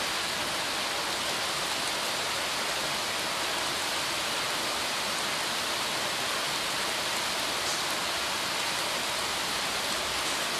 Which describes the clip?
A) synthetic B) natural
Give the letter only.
B